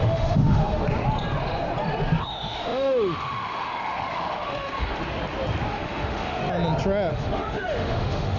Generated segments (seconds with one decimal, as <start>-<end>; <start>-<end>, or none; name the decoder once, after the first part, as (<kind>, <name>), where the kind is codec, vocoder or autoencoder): 0.0-0.8 (autoencoder, DAC-VAE); 2.2-5.0; 5.7-6.4; 7.1-8.4